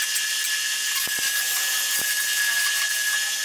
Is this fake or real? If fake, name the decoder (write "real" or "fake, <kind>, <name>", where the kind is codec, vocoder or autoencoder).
real